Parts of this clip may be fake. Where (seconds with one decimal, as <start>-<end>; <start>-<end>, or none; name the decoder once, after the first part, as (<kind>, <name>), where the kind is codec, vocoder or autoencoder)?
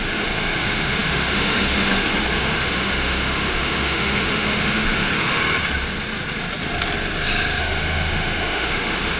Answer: 0.0-5.4 (autoencoder, DAC-VAE); 7.6-9.2